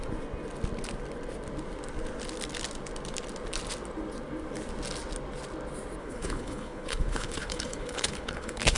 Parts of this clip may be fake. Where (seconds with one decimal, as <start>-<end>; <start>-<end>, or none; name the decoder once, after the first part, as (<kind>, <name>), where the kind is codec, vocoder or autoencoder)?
6.0-8.8 (codec, HILCodec)